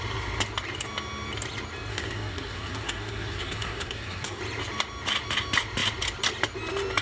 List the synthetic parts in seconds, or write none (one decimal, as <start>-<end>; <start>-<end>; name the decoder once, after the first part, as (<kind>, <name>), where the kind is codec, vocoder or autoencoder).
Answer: 1.9-4.4 (codec, SNAC)